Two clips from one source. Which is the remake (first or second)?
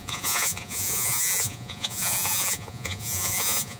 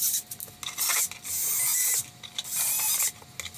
first